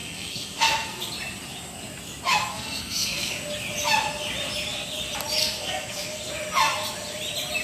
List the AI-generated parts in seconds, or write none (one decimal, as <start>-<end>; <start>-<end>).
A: 0.0-1.1; 2.3-3.3; 5.4-6.3